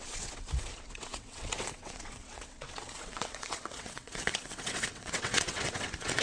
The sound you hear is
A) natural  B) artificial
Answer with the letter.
B